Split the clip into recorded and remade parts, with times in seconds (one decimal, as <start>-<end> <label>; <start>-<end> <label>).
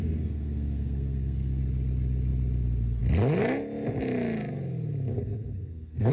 0.0-1.6 remade; 1.6-5.1 recorded; 5.1-6.1 remade